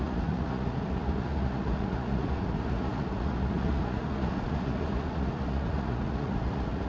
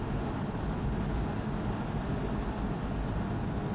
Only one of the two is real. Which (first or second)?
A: second